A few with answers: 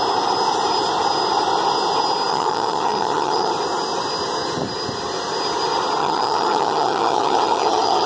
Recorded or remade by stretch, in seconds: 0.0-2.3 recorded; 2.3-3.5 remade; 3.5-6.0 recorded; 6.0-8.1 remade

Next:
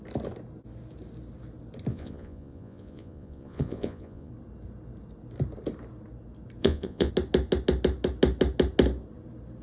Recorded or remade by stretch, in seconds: 0.0-1.9 recorded; 1.9-4.3 remade; 4.3-6.6 recorded; 6.6-7.1 remade; 7.1-9.6 recorded

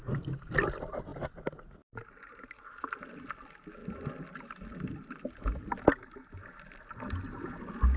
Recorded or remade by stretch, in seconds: 0.0-8.0 recorded

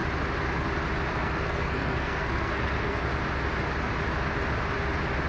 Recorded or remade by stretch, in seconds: 0.0-1.1 recorded; 1.1-3.1 remade; 3.1-5.3 recorded

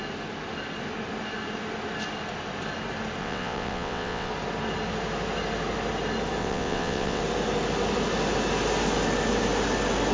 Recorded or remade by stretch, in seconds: 0.0-3.2 recorded; 3.2-4.3 remade; 4.3-6.4 recorded; 6.4-7.2 remade; 7.2-10.1 recorded